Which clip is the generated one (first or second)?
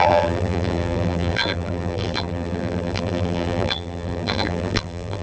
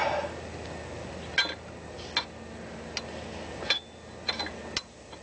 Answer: first